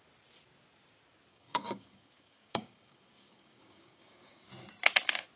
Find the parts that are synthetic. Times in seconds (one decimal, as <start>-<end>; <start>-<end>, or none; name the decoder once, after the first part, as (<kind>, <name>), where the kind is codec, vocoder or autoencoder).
1.3-4.5 (codec, DAC)